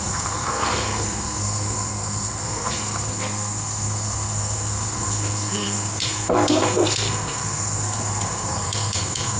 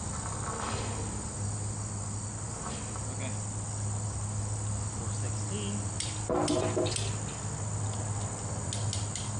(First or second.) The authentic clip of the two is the second